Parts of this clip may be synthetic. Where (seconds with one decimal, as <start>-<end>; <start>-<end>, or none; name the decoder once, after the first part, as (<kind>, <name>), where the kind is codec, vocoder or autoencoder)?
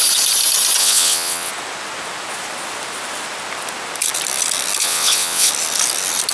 0.8-1.5 (vocoder, WaveNeXt); 4.8-5.5